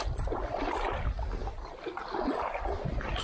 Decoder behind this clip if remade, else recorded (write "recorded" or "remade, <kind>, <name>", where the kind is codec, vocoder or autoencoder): recorded